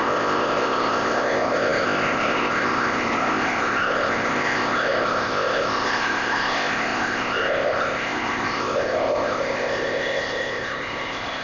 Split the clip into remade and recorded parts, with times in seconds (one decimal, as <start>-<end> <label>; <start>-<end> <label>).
0.0-11.4 remade